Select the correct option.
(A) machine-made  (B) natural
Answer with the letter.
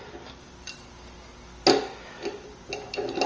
B